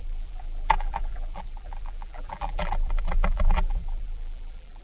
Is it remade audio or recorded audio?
remade